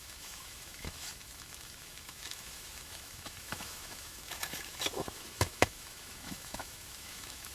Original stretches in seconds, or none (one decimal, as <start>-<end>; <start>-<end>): none